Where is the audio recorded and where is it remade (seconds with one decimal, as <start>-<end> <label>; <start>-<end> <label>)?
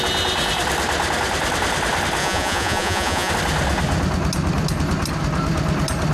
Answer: 0.0-2.2 recorded; 2.2-3.3 remade; 3.3-6.1 recorded